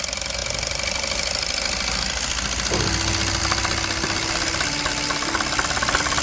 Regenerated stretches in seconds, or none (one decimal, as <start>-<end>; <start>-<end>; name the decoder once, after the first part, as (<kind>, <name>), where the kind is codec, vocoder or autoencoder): none